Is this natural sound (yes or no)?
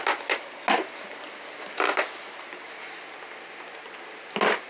yes